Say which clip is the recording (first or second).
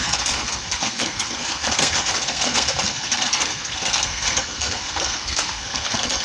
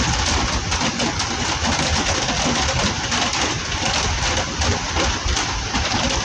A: second